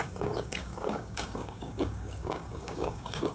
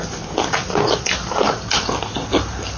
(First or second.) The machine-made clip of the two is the first